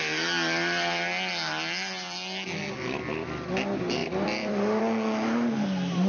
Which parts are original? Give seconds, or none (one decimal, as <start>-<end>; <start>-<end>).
0.0-4.0; 4.8-6.1